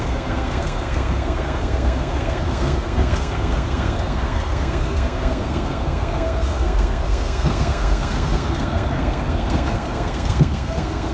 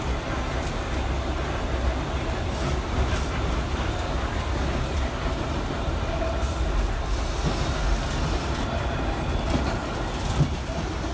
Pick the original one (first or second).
second